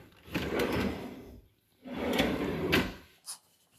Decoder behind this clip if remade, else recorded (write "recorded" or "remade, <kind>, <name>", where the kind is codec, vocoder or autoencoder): recorded